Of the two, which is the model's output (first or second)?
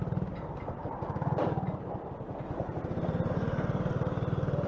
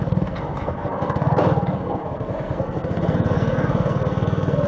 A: second